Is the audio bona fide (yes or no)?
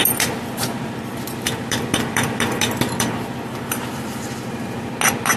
yes